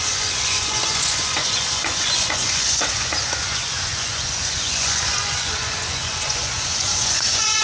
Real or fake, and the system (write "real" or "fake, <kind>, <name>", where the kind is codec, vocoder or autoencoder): fake, vocoder, Vocos